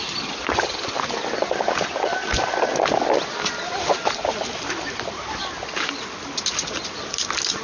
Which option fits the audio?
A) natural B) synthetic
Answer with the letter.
A